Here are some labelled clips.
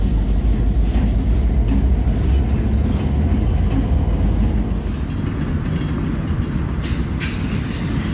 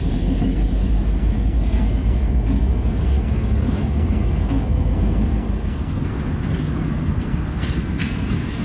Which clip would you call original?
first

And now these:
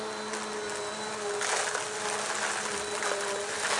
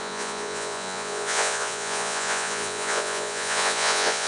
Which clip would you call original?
first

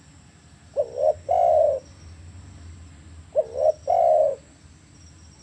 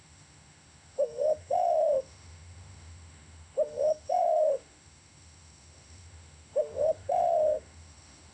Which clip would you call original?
first